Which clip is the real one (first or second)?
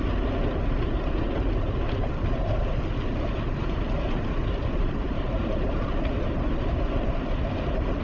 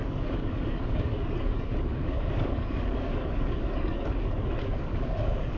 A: first